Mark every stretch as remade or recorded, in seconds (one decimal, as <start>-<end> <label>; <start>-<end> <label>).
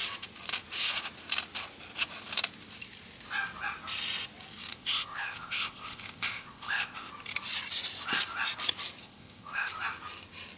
0.0-4.7 recorded; 4.7-7.1 remade; 7.1-9.0 recorded; 9.0-9.7 remade; 9.7-10.6 recorded